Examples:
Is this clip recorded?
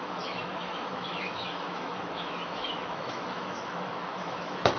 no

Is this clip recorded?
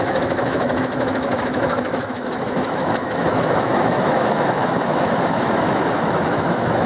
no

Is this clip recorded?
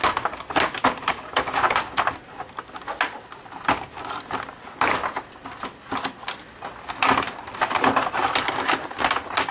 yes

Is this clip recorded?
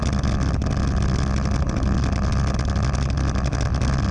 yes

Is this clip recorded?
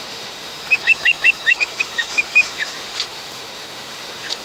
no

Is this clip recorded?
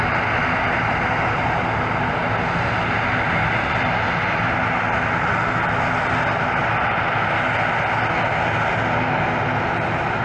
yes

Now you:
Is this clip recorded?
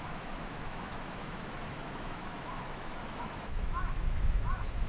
no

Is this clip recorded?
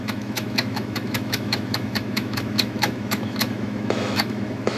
no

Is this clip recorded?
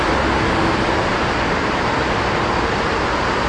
yes